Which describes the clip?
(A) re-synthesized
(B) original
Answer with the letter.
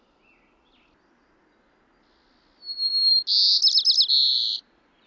B